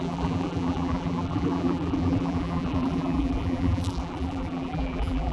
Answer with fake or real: fake